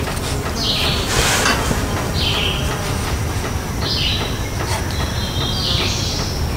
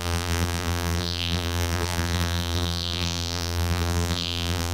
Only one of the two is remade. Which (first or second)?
second